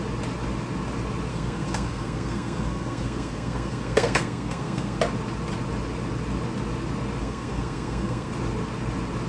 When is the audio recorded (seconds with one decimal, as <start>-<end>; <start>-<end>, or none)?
0.0-1.3; 5.0-7.2; 8.3-9.3